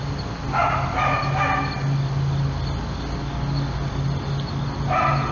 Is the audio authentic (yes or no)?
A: yes